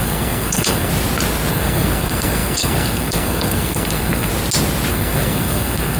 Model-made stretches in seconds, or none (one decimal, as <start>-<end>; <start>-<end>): 0.0-0.9; 1.5-4.3; 4.9-6.0